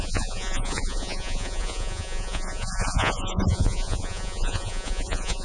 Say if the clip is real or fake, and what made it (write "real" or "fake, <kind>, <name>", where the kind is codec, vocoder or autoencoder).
fake, vocoder, Vocos